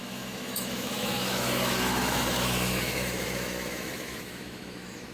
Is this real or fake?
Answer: fake